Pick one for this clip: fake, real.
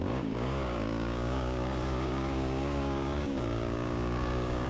fake